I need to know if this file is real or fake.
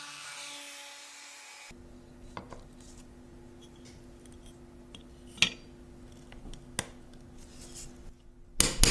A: real